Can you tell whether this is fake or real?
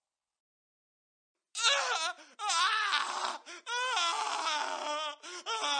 real